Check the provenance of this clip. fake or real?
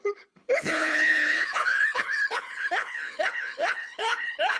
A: fake